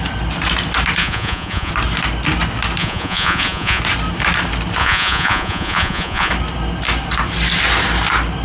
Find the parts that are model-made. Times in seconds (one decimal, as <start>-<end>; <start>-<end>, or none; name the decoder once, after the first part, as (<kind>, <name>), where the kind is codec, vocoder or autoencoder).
1.0-1.7 (vocoder, Vocos); 2.8-3.8; 4.8-6.3